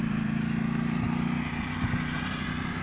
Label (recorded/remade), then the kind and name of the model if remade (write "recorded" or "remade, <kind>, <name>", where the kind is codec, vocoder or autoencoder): recorded